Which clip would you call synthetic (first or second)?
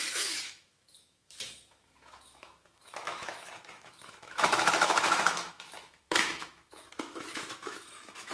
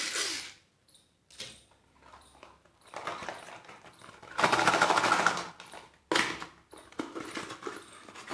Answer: first